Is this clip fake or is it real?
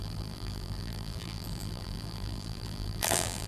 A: fake